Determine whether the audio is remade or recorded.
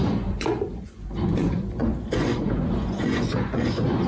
remade